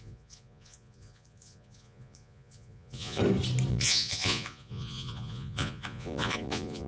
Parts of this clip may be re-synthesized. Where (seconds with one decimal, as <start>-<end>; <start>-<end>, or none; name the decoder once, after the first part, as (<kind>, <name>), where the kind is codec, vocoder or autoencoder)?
0.0-3.2 (vocoder, Vocos); 3.7-6.9